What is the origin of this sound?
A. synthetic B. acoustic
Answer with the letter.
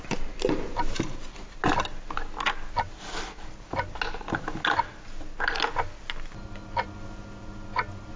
B